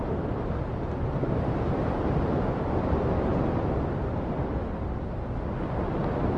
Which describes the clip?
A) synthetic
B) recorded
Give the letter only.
B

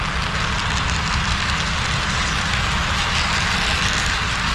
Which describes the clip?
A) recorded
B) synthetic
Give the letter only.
A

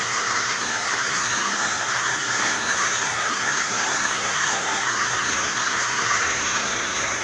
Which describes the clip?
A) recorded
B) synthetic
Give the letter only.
B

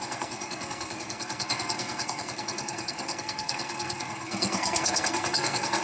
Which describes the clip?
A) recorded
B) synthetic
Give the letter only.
B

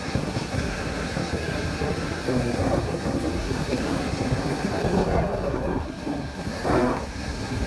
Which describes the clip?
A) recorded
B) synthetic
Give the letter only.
B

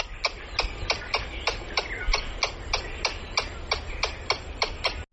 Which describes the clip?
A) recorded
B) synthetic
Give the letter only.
A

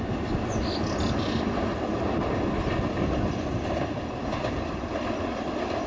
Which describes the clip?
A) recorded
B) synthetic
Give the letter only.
A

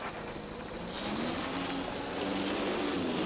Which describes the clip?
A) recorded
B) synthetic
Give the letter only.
A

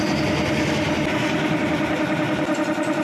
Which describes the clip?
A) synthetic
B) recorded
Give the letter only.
B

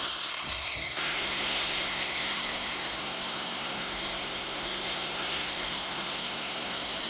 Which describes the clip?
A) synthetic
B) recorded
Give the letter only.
A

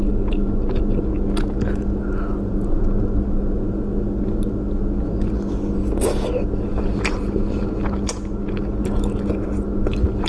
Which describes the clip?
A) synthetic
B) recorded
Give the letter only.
B